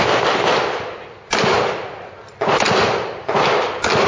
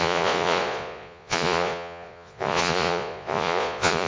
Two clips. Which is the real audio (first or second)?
first